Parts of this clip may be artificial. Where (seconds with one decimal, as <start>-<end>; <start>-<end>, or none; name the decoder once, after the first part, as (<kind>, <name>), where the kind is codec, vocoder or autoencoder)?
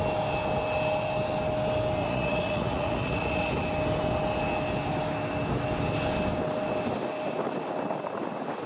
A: 2.0-3.5 (vocoder, Vocos)